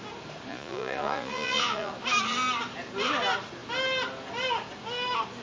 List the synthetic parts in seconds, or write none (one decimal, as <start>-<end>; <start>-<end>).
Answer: 0.5-1.9